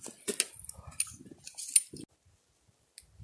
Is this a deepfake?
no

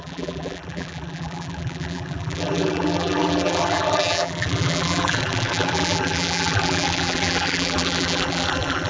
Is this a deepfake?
yes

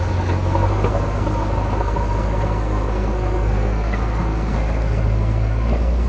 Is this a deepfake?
yes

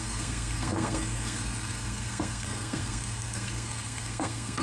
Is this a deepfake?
yes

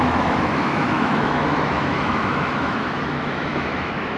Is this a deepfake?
yes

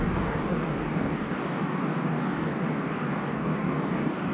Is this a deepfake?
yes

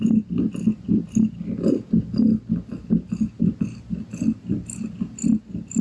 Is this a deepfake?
no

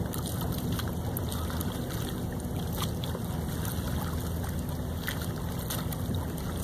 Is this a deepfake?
no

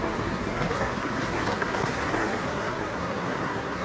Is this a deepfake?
yes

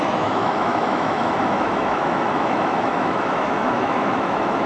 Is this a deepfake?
yes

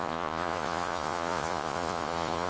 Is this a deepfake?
yes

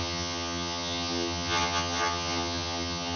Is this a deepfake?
yes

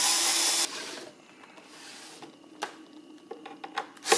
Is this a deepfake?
no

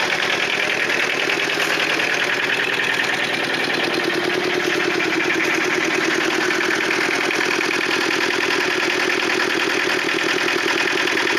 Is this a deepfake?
no